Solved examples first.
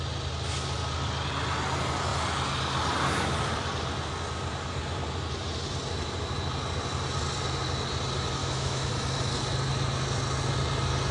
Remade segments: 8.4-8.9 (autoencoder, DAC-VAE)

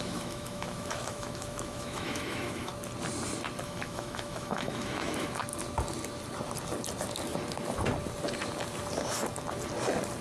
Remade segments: 0.0-2.7 (autoencoder, DAC-VAE); 3.6-5.4

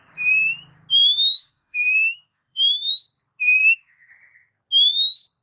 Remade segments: 1.0-2.9 (autoencoder, DAC-VAE); 3.6-4.1

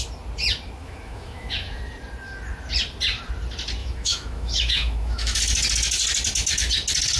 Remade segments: 0.8-1.8 (autoencoder, DAC-VAE); 3.8-5.4

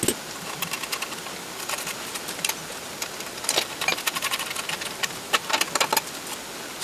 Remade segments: none